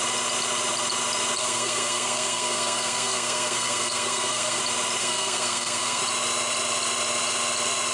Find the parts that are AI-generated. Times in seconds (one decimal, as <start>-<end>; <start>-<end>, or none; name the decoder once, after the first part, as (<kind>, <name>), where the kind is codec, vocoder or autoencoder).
1.4-4.6 (codec, SNAC); 5.0-6.0